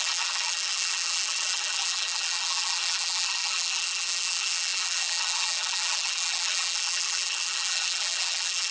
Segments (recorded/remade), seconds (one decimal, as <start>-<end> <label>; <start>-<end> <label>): 0.0-8.7 remade